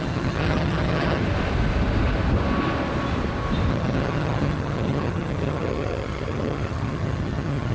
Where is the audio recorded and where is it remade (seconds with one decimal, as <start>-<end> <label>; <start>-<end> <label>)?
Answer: 0.0-1.2 remade; 1.2-3.7 recorded; 3.7-7.7 remade